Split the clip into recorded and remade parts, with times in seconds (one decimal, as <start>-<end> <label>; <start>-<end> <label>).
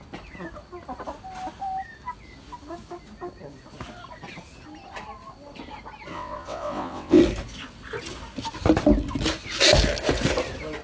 0.0-6.1 recorded; 6.1-7.2 remade; 7.2-10.8 recorded